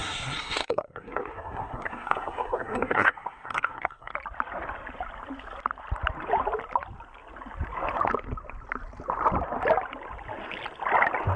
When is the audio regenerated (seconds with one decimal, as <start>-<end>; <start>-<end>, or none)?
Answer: 0.0-4.1